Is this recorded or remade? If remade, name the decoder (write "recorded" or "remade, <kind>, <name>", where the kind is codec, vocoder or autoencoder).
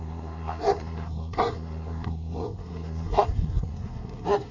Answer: remade, codec, SNAC